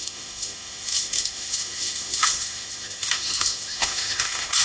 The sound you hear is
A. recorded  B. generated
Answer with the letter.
B